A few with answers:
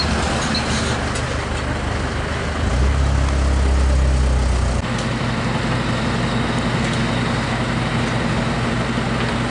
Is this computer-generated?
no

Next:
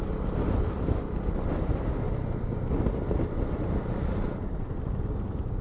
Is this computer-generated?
no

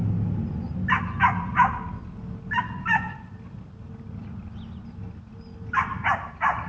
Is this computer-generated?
no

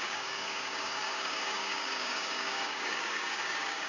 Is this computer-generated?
yes